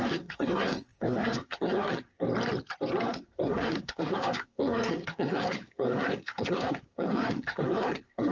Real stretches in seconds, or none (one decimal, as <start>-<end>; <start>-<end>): 2.2-3.1